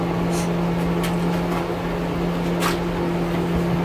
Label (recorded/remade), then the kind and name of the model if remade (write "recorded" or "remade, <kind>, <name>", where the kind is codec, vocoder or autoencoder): recorded